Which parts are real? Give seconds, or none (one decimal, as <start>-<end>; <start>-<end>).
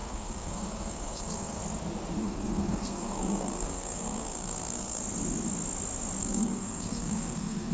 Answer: 1.6-2.2; 5.0-6.2